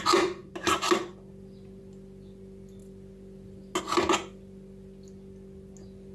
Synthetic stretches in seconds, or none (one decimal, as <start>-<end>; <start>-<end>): none